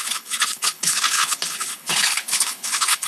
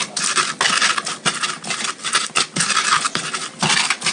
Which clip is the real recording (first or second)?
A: second